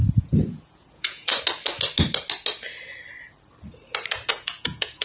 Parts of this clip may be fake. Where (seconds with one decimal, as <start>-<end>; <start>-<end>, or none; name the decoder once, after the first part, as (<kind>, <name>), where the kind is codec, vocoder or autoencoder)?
0.0-1.3 (vocoder, Vocos); 4.3-5.0